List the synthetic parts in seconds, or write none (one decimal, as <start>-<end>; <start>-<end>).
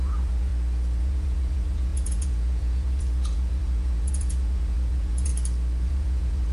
0.0-0.5; 1.0-5.3; 5.8-6.5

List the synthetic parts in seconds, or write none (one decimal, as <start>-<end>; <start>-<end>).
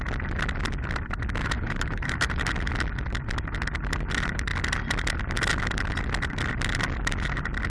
1.4-2.5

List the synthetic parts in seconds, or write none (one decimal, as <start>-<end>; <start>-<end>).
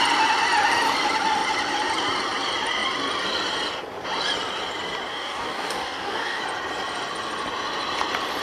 5.1-6.4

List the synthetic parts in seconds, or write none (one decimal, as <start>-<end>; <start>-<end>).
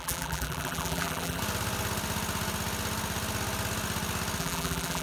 0.0-1.4; 4.4-5.0